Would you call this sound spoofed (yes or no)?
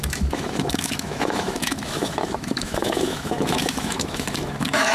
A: yes